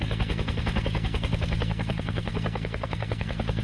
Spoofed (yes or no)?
yes